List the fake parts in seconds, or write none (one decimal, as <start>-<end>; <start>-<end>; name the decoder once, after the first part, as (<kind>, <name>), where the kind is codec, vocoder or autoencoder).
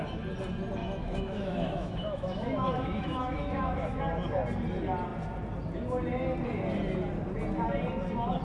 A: 0.8-4.0 (autoencoder, DAC-VAE)